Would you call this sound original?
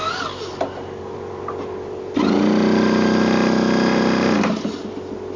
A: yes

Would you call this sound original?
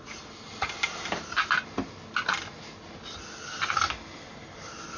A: yes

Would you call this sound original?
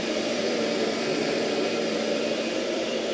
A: no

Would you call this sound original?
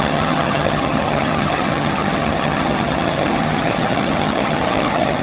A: no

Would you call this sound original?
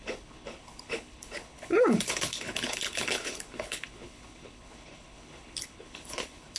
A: no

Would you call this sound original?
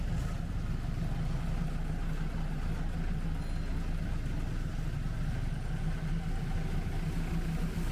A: yes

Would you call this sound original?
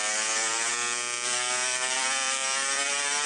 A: no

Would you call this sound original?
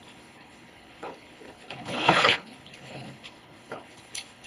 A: no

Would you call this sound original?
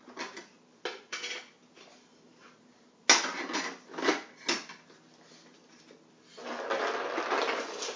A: yes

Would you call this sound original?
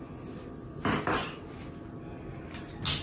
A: yes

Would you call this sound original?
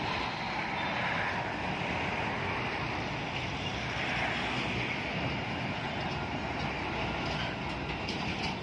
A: yes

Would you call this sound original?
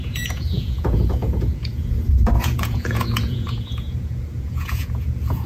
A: no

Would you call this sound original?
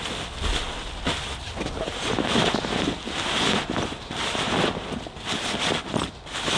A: yes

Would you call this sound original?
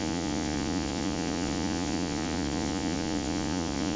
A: no